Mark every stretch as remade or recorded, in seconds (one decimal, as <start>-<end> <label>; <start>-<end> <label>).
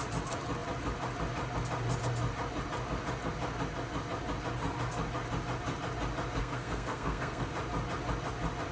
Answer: 0.0-6.4 recorded; 6.4-7.5 remade; 7.5-8.7 recorded